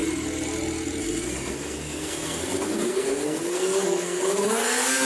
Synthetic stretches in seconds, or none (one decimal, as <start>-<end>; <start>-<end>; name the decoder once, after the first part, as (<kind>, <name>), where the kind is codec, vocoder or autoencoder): 1.0-5.0 (codec, SNAC)